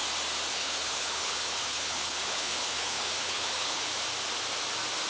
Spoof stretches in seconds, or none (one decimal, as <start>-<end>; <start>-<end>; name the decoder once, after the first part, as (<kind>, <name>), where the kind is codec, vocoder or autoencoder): 0.5-3.9 (codec, HILCodec)